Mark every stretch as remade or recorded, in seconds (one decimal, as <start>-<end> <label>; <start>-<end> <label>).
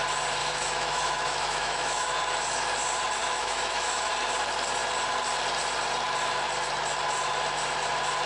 0.0-0.4 recorded; 0.4-2.2 remade; 2.2-3.2 recorded; 3.2-4.1 remade; 4.1-8.3 recorded